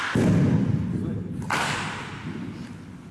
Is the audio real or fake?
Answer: real